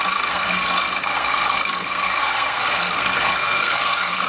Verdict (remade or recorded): remade